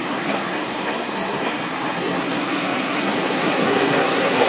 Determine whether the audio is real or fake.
fake